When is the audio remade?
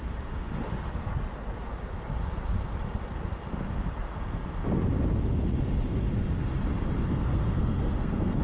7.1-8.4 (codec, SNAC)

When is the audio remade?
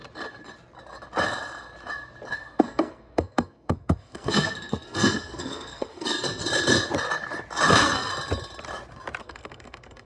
2.3-6.4 (codec, SNAC); 7.7-8.1; 9.2-10.0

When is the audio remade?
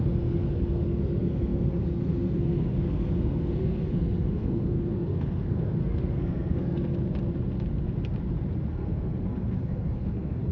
0.0-6.9 (codec, SNAC); 8.7-10.5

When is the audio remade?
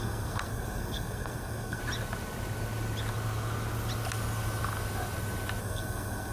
0.0-1.8 (codec, SNAC); 5.6-6.3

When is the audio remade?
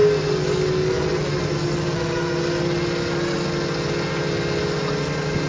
none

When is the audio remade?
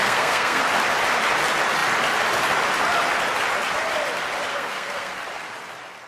0.0-0.6 (codec, SNAC); 4.5-5.1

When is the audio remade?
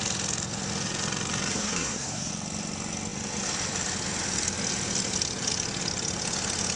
1.5-2.3 (codec, SNAC)